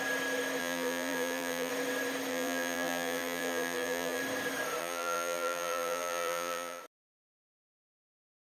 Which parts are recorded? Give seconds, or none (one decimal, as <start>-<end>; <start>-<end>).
0.0-0.6; 1.7-2.3; 4.2-4.8; 6.8-8.4